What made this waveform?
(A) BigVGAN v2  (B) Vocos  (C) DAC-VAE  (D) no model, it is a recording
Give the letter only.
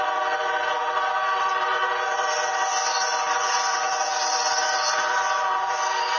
B